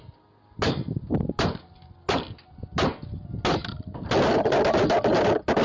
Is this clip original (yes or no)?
yes